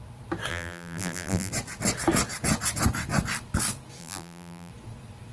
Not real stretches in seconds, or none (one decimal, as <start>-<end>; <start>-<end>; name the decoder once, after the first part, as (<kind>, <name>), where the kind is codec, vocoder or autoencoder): 0.5-1.5 (vocoder, BigVGAN v2); 4.0-4.7

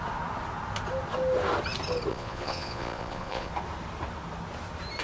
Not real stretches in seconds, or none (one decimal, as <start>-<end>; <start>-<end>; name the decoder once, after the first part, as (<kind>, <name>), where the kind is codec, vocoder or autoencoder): 2.1-3.5 (vocoder, Vocos)

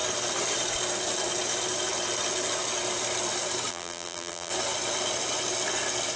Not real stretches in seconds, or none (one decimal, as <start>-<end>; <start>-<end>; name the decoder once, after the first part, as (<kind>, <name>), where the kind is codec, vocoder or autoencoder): 3.7-4.5 (vocoder, BigVGAN v2)

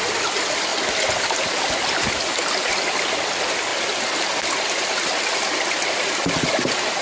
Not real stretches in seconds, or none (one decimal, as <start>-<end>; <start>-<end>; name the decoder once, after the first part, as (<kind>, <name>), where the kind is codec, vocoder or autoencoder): none

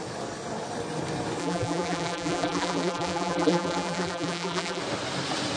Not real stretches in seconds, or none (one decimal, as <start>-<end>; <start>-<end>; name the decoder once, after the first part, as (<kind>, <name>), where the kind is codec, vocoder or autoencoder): 1.4-4.8 (vocoder, BigVGAN v2)